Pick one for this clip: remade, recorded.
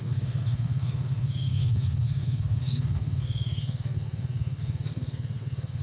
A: remade